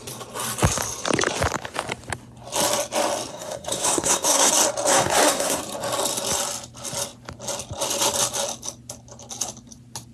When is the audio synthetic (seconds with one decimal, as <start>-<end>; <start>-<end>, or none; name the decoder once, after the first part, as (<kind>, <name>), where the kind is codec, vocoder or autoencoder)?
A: 3.3-4.5 (codec, SNAC); 4.9-5.6